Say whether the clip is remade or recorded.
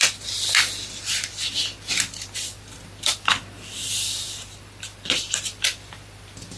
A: remade